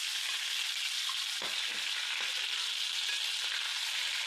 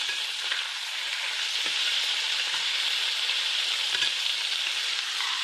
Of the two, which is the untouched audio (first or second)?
first